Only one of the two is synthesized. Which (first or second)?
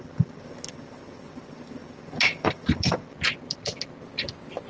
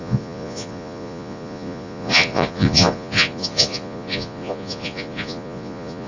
second